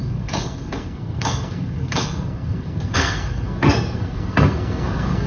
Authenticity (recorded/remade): remade